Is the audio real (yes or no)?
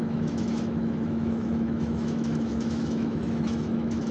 no